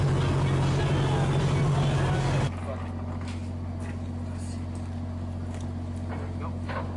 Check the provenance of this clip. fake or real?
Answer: real